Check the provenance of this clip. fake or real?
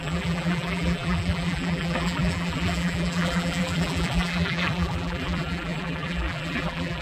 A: fake